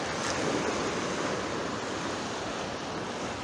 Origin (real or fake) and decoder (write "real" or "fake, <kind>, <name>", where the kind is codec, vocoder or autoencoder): real